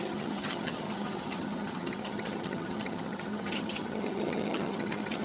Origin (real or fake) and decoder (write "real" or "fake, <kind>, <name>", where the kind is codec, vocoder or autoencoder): fake, vocoder, HiFi-GAN